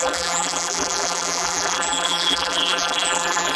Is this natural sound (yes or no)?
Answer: no